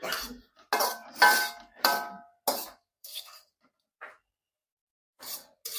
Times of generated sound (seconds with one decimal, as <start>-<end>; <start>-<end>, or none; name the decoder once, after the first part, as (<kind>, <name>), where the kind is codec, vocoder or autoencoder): 2.9-3.5 (codec, SNAC)